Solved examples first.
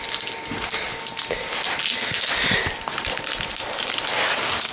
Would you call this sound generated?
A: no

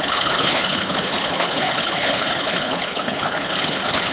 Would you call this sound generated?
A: yes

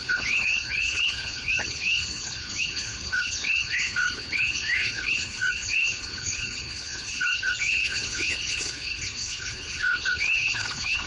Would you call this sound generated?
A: yes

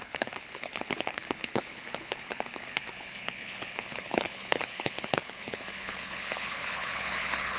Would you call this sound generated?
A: yes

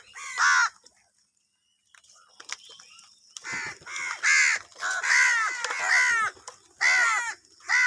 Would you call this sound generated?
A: no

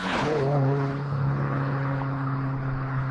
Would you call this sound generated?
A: yes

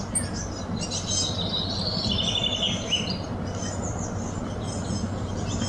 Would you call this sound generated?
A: no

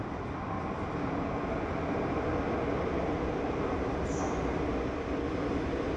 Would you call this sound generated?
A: no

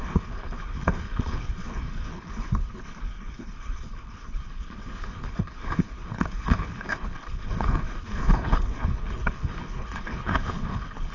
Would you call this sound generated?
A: yes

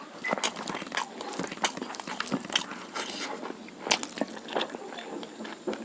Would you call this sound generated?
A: no